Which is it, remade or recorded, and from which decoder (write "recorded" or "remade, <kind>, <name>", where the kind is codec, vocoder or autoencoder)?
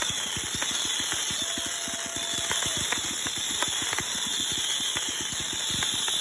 recorded